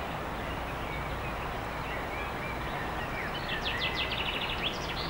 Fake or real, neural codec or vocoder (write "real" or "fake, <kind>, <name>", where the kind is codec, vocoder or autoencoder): real